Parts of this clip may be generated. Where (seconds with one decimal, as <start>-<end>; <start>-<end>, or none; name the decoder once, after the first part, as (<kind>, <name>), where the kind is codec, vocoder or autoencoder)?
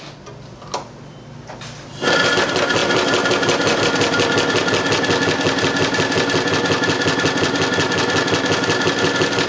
none